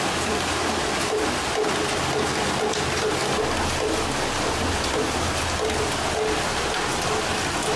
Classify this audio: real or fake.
real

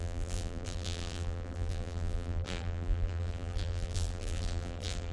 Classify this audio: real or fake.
fake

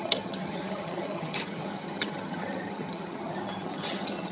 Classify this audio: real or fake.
fake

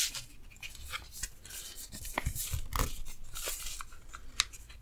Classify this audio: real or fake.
real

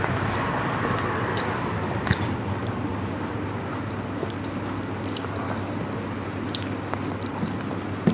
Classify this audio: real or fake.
fake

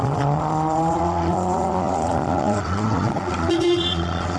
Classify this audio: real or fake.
fake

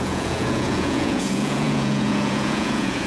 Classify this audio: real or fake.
fake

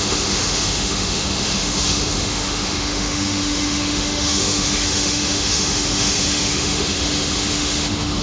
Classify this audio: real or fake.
fake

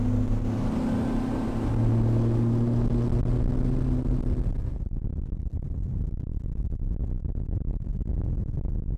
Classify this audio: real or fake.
real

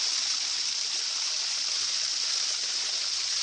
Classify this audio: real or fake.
real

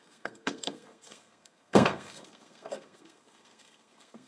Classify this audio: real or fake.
fake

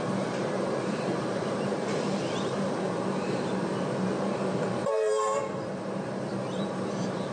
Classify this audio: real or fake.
fake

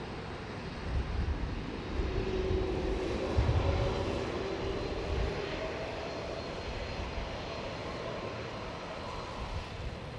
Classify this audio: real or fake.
real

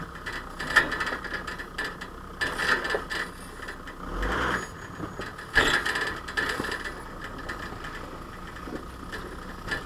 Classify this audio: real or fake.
real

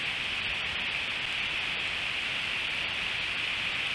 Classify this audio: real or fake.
real